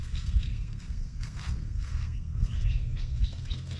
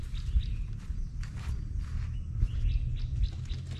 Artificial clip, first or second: first